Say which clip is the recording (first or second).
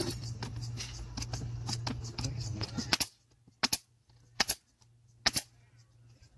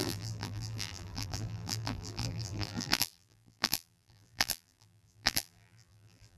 first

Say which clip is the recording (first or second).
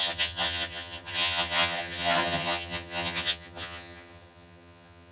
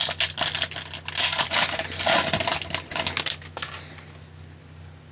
second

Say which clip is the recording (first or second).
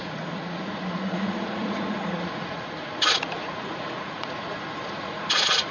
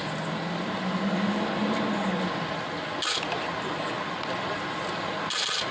second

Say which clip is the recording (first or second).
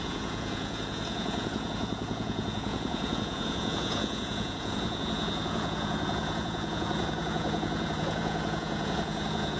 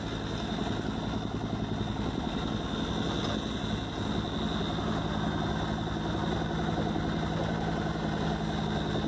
second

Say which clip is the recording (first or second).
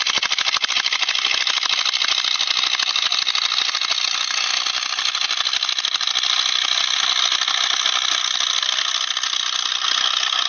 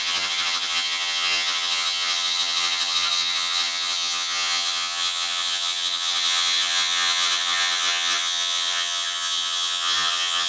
first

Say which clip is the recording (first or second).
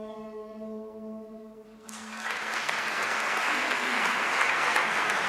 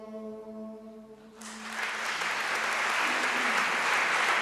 second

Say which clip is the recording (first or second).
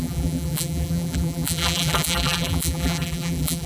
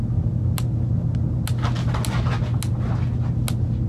second